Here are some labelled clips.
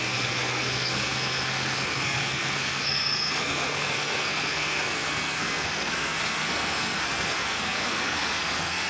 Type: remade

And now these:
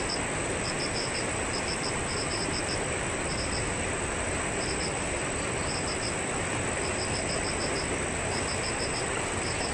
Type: recorded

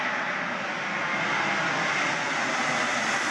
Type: recorded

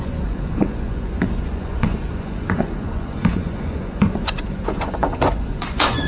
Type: remade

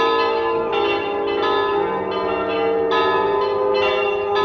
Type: recorded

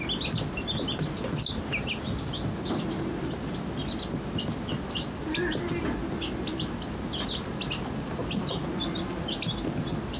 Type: recorded